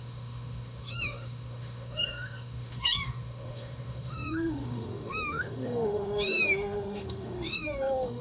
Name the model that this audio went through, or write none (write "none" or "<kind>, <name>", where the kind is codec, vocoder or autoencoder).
autoencoder, DAC-VAE